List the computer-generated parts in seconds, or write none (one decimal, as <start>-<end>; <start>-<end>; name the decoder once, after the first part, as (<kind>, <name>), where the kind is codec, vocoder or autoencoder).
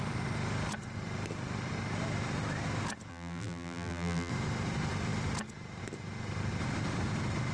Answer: 3.1-4.3 (vocoder, BigVGAN v2)